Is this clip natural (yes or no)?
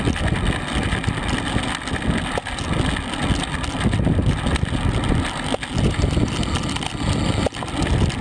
yes